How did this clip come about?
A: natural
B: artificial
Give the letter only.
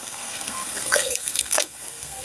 B